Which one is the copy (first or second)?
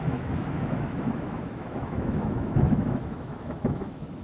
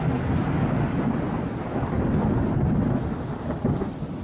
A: first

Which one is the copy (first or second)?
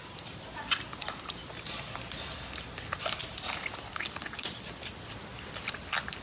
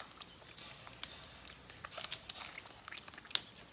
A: first